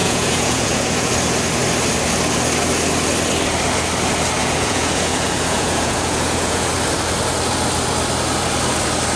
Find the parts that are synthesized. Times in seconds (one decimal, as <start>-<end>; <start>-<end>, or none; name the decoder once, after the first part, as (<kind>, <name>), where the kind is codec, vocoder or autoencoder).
0.0-1.1 (vocoder, Vocos); 4.4-6.7